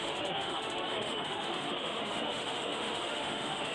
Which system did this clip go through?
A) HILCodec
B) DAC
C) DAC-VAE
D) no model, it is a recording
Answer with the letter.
C